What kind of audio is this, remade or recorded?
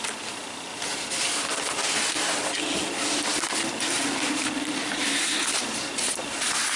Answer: recorded